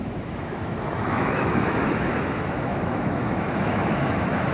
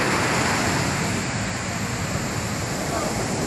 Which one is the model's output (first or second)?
first